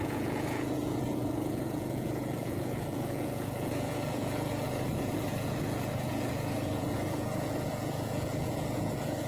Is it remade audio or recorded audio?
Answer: remade